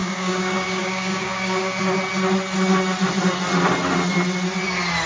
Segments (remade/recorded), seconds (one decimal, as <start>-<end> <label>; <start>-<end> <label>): 0.0-1.8 remade; 1.8-5.1 recorded